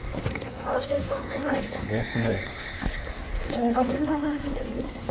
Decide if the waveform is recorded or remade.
remade